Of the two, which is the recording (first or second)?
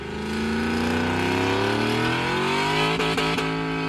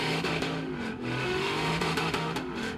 first